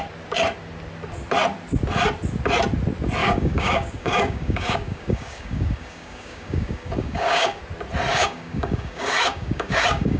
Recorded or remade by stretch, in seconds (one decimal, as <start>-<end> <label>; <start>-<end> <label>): 0.0-3.2 recorded; 3.2-7.6 remade; 7.6-8.1 recorded; 8.1-10.2 remade